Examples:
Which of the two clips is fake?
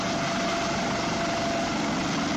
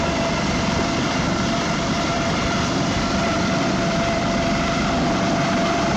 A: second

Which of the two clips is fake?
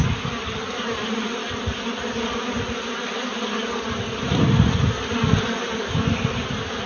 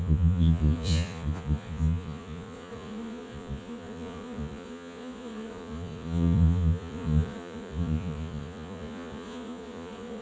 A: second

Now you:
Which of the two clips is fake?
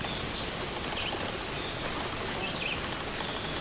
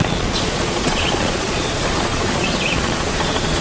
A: second